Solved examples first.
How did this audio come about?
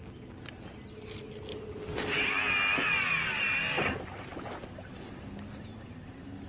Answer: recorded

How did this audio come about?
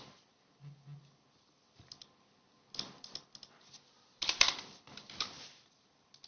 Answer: recorded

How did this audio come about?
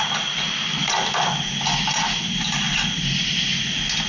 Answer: recorded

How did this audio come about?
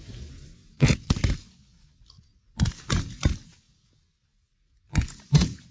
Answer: recorded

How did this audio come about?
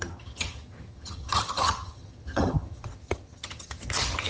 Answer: remade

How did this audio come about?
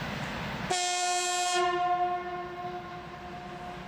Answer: recorded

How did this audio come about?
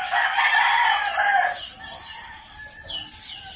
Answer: recorded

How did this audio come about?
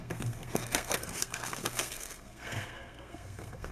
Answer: remade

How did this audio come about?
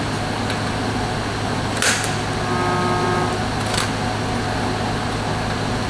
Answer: recorded